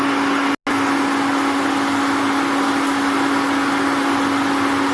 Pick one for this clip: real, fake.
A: real